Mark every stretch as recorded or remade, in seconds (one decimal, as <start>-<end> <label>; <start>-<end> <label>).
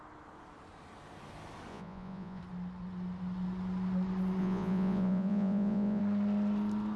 0.0-1.7 recorded; 1.7-2.4 remade; 2.4-4.4 recorded; 4.4-6.0 remade; 6.0-7.0 recorded